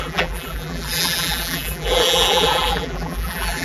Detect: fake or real fake